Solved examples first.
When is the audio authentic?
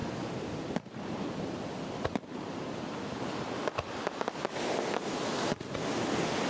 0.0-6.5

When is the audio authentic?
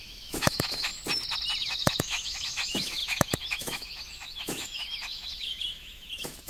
0.9-1.6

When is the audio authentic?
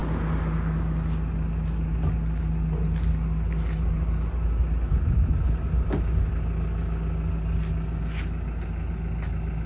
0.0-9.7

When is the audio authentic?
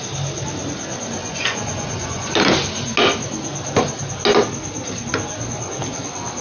0.0-1.2; 2.3-6.4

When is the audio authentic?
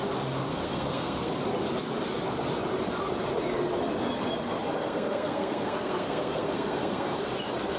0.0-0.5; 1.3-4.8; 7.3-7.8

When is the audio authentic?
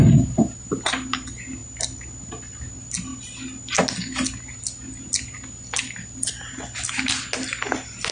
0.0-8.1